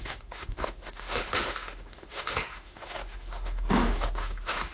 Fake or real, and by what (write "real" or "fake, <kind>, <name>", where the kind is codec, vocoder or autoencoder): fake, autoencoder, DAC-VAE